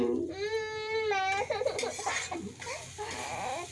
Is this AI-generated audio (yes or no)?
no